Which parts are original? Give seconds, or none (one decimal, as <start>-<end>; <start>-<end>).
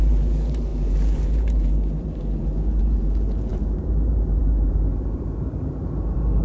none